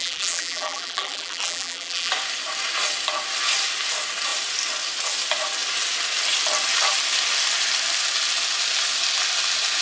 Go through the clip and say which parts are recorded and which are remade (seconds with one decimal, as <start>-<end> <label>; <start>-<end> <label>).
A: 0.0-2.1 remade; 2.1-9.8 recorded